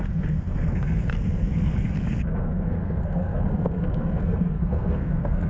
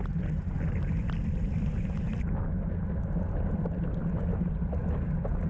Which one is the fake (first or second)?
first